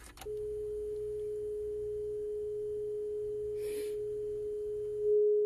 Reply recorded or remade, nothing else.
recorded